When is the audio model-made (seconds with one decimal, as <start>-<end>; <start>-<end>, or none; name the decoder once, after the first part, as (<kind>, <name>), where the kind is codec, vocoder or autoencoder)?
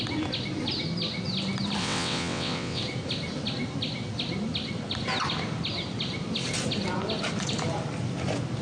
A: 1.8-2.8 (vocoder, WaveNeXt)